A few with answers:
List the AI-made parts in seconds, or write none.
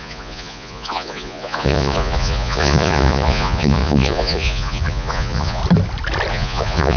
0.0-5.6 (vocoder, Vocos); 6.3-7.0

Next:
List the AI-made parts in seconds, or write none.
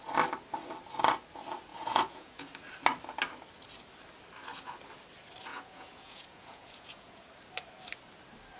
1.7-2.5 (vocoder, Vocos); 5.5-7.3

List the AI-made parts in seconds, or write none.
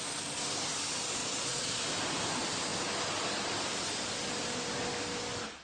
1.2-1.8 (vocoder, Vocos)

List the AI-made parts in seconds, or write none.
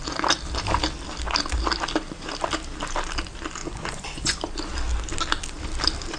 3.6-4.5 (vocoder, Vocos)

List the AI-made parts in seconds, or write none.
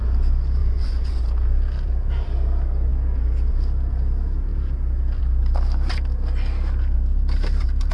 0.6-1.2 (vocoder, Vocos)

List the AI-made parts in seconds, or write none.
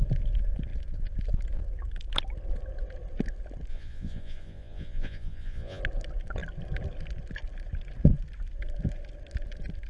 3.7-5.8 (vocoder, Vocos)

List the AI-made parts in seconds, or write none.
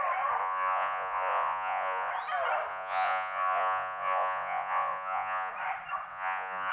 0.4-2.1 (vocoder, Vocos); 2.7-5.5; 6.1-6.7